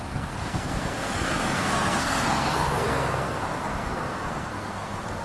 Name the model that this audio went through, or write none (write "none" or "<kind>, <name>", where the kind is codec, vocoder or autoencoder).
codec, SNAC